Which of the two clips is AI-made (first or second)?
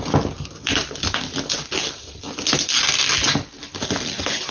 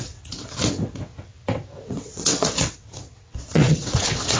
second